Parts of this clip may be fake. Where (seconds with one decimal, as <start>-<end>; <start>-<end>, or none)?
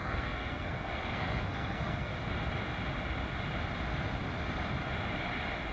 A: 0.0-2.1